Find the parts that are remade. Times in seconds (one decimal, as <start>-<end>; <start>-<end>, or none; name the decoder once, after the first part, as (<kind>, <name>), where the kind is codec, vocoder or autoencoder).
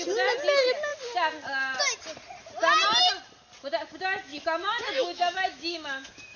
4.3-6.4 (autoencoder, DAC-VAE)